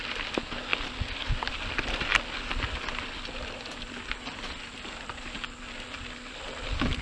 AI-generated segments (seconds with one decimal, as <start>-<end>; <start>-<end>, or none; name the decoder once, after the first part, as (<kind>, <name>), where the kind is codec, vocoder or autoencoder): none